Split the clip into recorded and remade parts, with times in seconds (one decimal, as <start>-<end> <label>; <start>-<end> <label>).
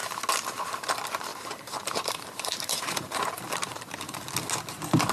0.0-1.3 recorded; 1.3-3.3 remade; 3.3-3.7 recorded; 3.7-4.3 remade; 4.3-5.1 recorded